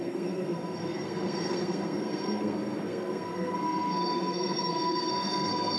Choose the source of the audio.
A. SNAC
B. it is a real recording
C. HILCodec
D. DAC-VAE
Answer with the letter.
A